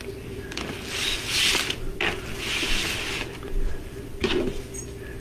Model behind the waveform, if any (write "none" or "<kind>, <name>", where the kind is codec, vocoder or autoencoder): none